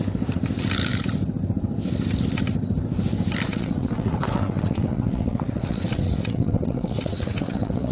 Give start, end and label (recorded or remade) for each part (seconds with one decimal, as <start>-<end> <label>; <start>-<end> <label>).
0.0-3.5 recorded; 3.5-7.9 remade

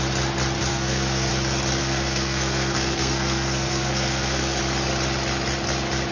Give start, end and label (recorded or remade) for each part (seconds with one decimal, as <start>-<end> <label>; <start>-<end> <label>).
0.0-0.7 recorded; 0.7-1.3 remade; 1.3-1.8 recorded; 1.8-4.6 remade; 4.6-6.1 recorded

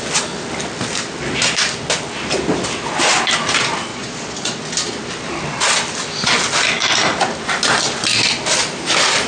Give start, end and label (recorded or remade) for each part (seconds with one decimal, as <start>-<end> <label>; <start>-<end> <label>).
0.0-3.9 recorded; 3.9-4.6 remade; 4.6-9.3 recorded

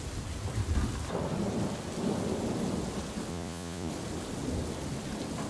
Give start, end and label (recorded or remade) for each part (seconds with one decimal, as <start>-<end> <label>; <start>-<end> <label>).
0.0-3.3 recorded; 3.3-3.9 remade; 3.9-5.5 recorded

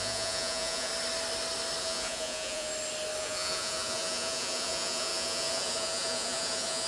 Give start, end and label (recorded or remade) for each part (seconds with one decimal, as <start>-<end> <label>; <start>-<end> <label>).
0.0-0.9 remade; 0.9-1.8 recorded; 1.8-2.7 remade; 2.7-3.2 recorded; 3.2-6.9 remade

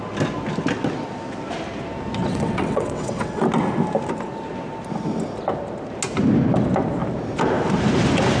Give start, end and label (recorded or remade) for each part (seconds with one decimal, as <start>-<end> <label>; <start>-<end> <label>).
0.0-2.3 recorded; 2.3-3.4 remade; 3.4-8.4 recorded

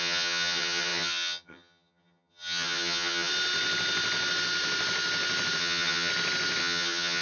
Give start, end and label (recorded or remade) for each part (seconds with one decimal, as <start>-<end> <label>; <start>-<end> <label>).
0.0-3.3 remade; 3.3-5.6 recorded; 5.6-6.1 remade; 6.1-6.6 recorded; 6.6-7.2 remade

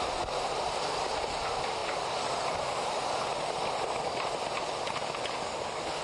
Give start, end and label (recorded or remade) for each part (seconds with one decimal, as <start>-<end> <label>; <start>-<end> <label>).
0.0-6.0 recorded